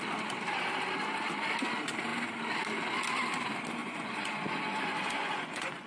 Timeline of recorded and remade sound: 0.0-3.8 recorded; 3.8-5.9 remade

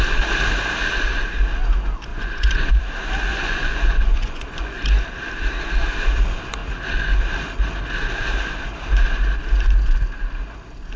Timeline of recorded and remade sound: 0.0-2.1 recorded; 2.1-2.8 remade; 2.8-3.3 recorded; 3.3-4.8 remade; 4.8-11.0 recorded

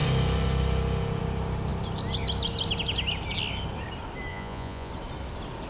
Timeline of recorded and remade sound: 0.0-4.3 recorded; 4.3-4.9 remade; 4.9-5.7 recorded